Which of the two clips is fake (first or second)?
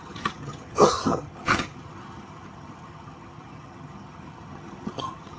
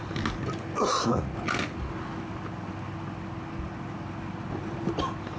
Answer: first